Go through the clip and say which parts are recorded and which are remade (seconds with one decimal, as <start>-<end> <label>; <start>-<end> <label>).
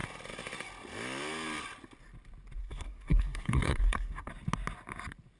0.0-2.6 recorded; 2.6-4.3 remade; 4.3-5.4 recorded